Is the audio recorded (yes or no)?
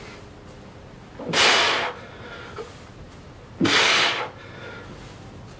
yes